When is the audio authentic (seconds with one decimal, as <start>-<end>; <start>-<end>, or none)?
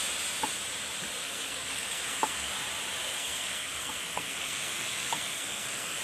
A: 0.0-1.2; 2.5-3.1